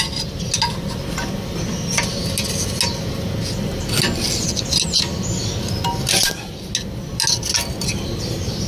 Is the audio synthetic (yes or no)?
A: no